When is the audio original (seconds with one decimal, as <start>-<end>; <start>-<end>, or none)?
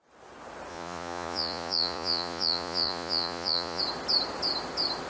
0.0-0.7; 3.8-5.1